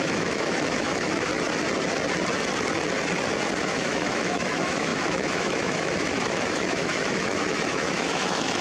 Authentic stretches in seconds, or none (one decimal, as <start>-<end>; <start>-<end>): 1.3-3.6